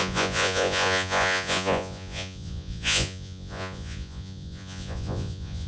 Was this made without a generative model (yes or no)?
no